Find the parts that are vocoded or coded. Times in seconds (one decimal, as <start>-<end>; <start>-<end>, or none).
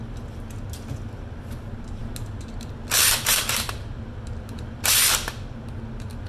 none